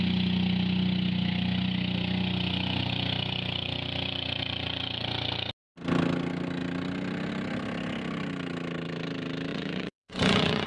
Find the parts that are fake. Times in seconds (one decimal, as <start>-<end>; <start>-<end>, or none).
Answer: 9.5-10.7